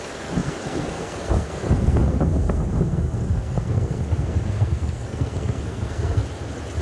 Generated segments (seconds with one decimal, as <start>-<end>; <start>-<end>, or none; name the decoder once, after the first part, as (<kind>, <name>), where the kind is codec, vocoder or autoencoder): 0.0-6.2 (codec, SNAC)